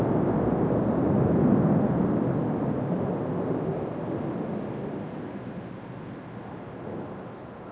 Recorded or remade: recorded